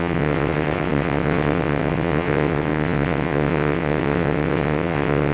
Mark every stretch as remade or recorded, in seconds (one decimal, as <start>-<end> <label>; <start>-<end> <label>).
0.0-5.3 remade